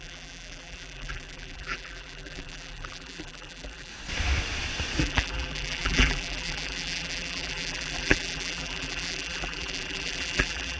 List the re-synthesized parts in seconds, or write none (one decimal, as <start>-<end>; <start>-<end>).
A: 0.0-3.9; 5.0-10.8